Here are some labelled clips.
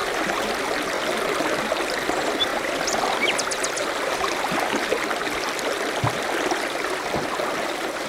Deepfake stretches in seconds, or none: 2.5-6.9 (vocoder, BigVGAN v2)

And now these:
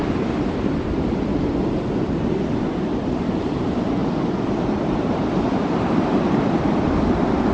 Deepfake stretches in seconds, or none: 0.0-4.0 (vocoder, BigVGAN v2); 4.6-7.5

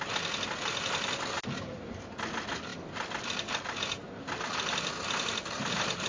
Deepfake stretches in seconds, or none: none

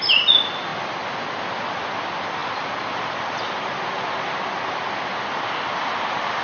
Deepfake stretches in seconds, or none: none